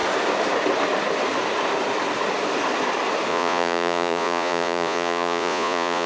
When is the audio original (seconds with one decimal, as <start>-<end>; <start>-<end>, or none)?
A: 0.0-3.3